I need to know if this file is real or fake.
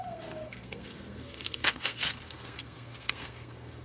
fake